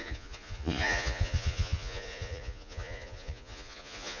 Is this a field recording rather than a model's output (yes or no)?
no